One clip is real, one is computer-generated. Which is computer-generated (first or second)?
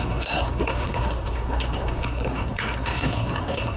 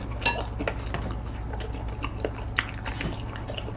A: first